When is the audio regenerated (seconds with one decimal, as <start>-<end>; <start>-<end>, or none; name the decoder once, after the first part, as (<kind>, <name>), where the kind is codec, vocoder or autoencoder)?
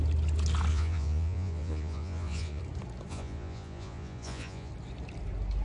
0.7-2.6 (vocoder, Vocos); 3.1-4.7